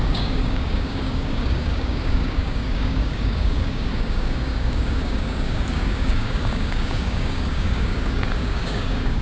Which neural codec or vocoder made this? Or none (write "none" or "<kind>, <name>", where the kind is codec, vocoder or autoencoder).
codec, DAC